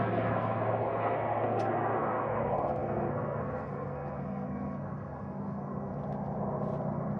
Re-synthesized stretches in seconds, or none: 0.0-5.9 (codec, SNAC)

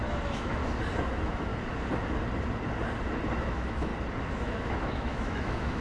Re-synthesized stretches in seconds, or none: 0.0-0.6 (autoencoder, DAC-VAE); 1.1-1.5; 3.4-3.9; 4.4-5.8

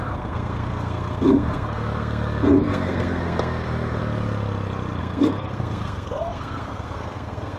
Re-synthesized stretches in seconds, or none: 0.0-4.0 (codec, SNAC); 5.0-7.6

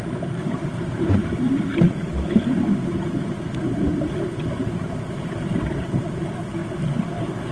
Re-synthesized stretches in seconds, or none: 0.0-7.5 (vocoder, BigVGAN v2)

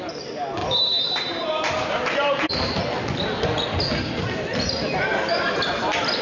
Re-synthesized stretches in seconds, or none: 0.6-2.8 (vocoder, BigVGAN v2)

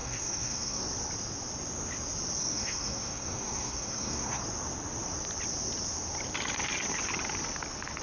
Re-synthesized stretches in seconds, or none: 0.0-0.8 (codec, SNAC); 2.4-4.4

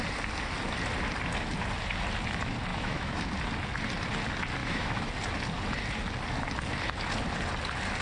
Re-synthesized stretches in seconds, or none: 2.7-3.3 (autoencoder, DAC-VAE); 4.6-5.1

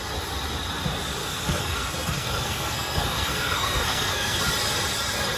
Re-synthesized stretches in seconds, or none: 1.2-4.4 (codec, SNAC)